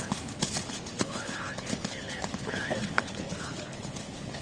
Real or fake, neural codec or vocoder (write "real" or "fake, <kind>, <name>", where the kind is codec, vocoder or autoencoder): fake, codec, HILCodec